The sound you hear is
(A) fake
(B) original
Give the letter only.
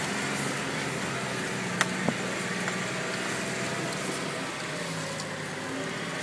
B